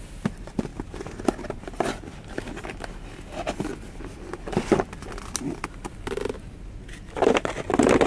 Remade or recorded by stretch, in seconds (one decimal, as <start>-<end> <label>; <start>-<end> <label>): 0.0-8.1 recorded